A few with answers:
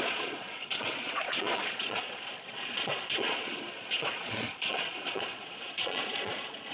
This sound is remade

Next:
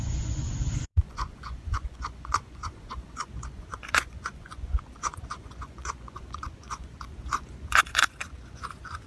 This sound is remade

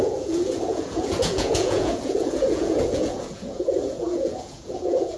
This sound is remade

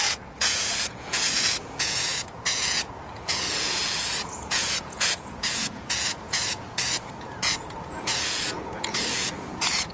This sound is remade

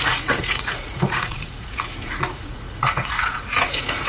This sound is remade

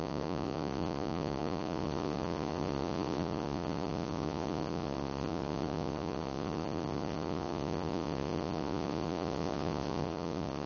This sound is remade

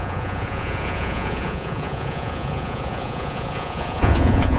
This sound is remade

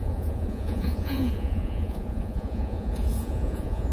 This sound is remade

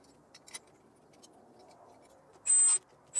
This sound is recorded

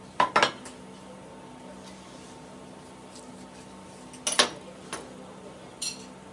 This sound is recorded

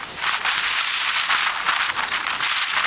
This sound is recorded